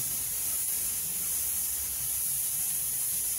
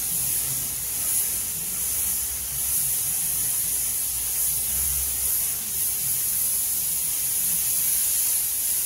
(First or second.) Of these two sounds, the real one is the second